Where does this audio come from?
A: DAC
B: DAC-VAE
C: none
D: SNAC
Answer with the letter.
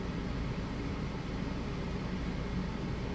C